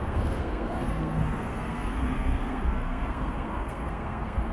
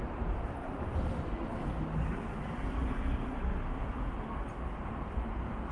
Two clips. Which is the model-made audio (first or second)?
first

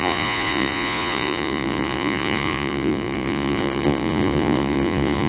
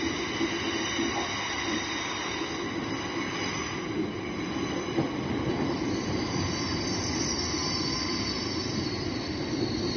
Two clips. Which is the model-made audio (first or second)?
first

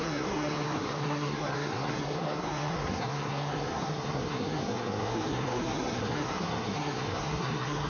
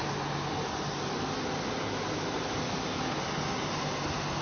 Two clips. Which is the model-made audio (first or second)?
first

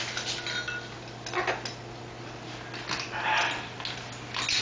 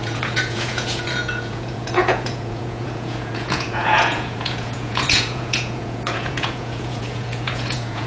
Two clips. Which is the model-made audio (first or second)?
second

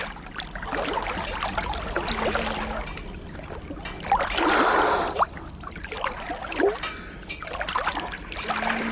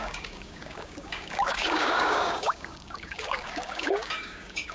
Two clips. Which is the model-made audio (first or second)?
second